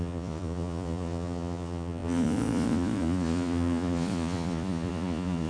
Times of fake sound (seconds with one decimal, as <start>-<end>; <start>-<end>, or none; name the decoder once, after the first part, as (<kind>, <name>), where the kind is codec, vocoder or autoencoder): 0.0-5.5 (vocoder, Vocos)